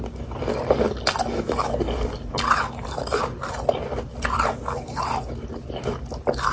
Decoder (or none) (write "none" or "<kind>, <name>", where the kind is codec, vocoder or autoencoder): none